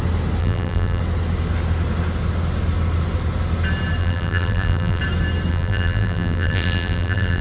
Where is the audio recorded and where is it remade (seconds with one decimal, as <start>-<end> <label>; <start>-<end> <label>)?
0.0-0.4 recorded; 0.4-1.0 remade; 1.0-4.0 recorded; 4.0-5.0 remade; 5.0-5.5 recorded; 5.5-7.4 remade